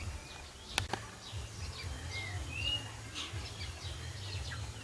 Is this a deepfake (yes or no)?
no